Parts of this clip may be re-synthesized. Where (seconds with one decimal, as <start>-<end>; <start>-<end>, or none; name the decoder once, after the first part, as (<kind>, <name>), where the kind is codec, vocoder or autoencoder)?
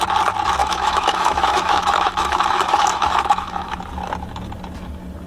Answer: 0.6-3.8 (autoencoder, DAC-VAE)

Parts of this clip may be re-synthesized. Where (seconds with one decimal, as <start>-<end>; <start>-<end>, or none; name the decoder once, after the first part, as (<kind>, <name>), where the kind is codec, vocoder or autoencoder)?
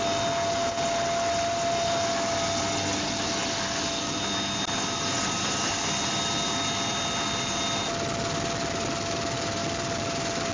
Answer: none